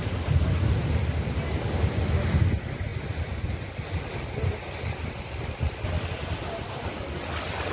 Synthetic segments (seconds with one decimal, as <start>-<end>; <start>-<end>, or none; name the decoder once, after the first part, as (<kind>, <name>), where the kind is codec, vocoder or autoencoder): none